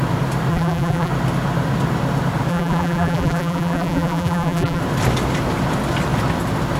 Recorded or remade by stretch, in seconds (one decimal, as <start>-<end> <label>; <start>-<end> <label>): 0.0-0.5 recorded; 0.5-1.1 remade; 1.1-2.5 recorded; 2.5-4.8 remade; 4.8-6.8 recorded